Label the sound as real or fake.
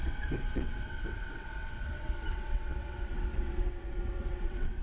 fake